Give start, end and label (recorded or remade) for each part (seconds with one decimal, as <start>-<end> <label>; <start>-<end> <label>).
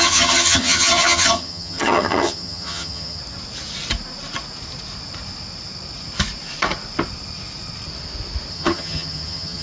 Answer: 0.0-3.2 remade; 3.2-8.5 recorded; 8.5-9.6 remade